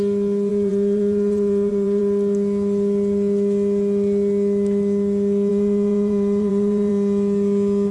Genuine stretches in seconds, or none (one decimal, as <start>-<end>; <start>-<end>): 0.0-0.5; 2.0-5.5; 6.9-7.9